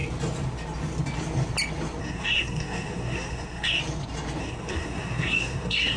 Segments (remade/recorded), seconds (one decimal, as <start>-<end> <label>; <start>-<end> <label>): 0.0-2.0 recorded; 2.0-3.8 remade; 3.8-4.4 recorded; 4.4-6.0 remade